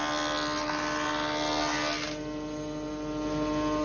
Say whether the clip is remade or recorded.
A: recorded